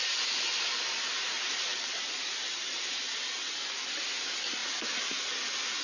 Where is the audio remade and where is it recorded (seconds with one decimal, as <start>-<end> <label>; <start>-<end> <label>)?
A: 0.0-5.8 recorded

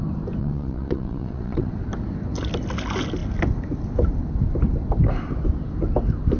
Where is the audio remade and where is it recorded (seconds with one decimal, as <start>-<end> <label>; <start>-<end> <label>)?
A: 0.0-0.4 recorded; 0.4-1.7 remade; 1.7-6.4 recorded

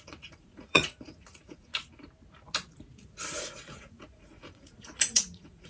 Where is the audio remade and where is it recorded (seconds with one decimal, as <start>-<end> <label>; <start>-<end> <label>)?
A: 0.0-1.7 remade; 1.7-2.9 recorded; 2.9-5.7 remade

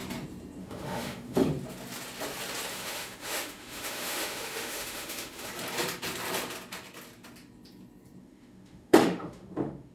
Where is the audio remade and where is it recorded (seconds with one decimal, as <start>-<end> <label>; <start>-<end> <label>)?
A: 0.0-0.6 recorded; 0.6-1.5 remade; 1.5-2.7 recorded; 2.7-5.5 remade; 5.5-8.2 recorded; 8.2-9.9 remade

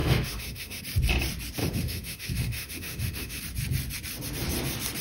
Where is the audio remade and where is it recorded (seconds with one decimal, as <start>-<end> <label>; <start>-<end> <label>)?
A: 0.0-0.8 remade; 0.8-1.6 recorded; 1.6-3.4 remade; 3.4-5.0 recorded